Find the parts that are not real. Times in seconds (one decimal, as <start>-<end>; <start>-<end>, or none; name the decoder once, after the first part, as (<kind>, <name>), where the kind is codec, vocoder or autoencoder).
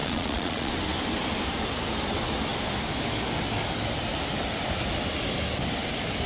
0.0-0.7 (vocoder, Vocos)